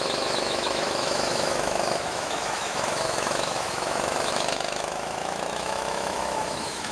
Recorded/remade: remade